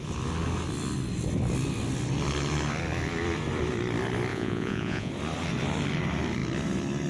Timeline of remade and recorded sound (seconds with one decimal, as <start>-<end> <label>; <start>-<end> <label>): 0.0-4.3 recorded; 4.3-5.1 remade; 5.1-7.1 recorded